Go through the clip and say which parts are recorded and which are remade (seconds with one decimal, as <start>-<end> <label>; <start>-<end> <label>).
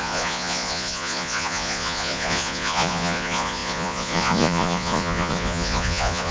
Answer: 0.0-6.3 remade